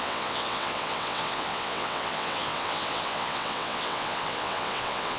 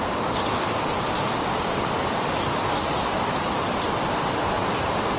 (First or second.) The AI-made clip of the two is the first